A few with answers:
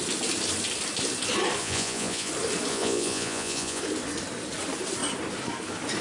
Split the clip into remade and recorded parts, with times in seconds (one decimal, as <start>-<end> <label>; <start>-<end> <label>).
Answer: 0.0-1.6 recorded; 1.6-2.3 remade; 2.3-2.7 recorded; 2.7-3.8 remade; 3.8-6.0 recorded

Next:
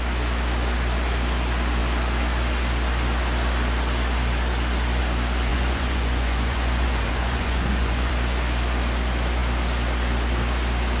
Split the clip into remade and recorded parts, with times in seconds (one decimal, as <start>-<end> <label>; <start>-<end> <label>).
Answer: 0.0-5.5 recorded; 5.5-8.1 remade; 8.1-11.0 recorded

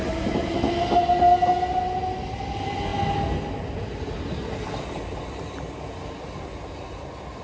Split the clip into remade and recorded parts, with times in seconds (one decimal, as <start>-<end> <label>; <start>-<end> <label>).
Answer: 0.0-7.4 recorded